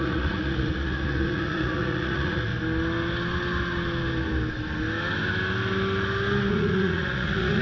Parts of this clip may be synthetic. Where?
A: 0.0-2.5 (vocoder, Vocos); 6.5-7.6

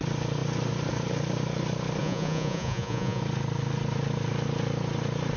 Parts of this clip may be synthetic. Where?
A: 2.0-3.2 (vocoder, Vocos)

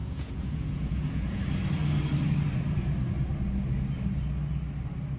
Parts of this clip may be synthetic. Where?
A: 0.0-1.4 (vocoder, Vocos)

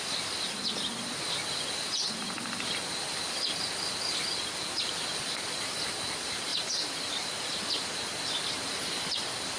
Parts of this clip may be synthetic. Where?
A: none

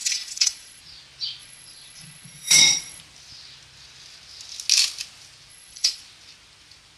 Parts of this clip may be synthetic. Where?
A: 0.0-0.8 (vocoder, Vocos); 1.4-3.0; 5.5-6.0

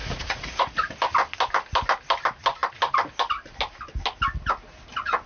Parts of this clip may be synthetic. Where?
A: 0.0-0.9 (vocoder, Vocos)

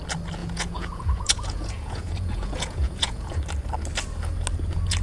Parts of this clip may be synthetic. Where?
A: 0.4-3.4 (vocoder, Vocos)

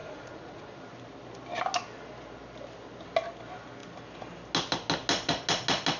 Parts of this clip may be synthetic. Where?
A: 0.0-0.8 (vocoder, Vocos)